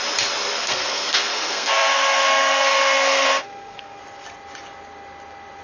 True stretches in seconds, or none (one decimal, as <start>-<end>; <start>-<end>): 0.0-0.6; 4.0-5.6